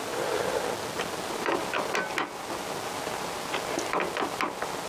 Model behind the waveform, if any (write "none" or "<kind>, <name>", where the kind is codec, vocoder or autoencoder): none